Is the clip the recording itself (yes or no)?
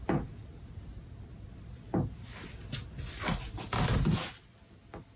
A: yes